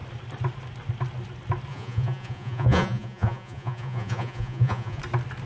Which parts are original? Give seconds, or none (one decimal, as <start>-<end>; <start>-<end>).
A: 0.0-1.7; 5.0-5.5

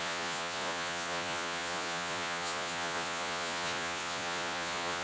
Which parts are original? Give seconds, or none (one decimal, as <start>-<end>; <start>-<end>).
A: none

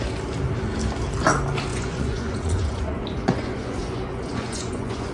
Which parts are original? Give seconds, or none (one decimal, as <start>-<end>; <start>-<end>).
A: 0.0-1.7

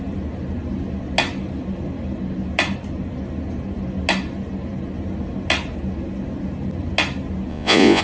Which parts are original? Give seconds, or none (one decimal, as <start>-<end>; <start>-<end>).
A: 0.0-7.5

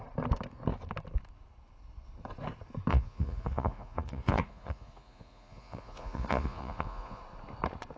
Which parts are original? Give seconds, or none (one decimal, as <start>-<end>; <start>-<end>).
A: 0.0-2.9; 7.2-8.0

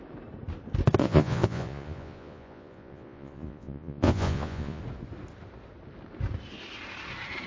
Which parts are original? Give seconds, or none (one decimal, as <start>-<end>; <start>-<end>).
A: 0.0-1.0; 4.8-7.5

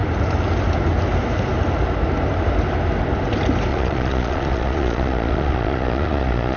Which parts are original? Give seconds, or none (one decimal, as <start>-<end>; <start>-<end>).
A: 0.0-3.7

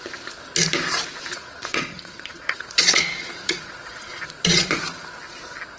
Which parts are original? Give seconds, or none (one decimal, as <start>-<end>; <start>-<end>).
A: 0.0-1.3; 4.8-5.8